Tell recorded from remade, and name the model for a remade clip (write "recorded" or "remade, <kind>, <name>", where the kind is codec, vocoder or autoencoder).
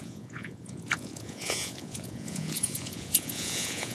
remade, vocoder, Vocos